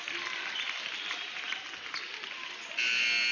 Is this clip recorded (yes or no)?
yes